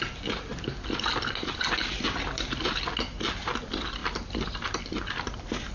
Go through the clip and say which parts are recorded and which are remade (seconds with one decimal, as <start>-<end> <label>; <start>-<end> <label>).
0.0-5.7 recorded